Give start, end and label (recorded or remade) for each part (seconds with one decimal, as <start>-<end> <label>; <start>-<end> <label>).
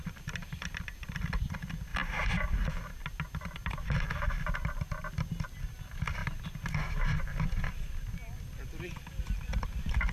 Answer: 0.0-10.1 recorded